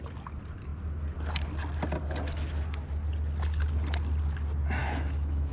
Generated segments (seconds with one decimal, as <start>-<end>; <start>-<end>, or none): 4.8-5.5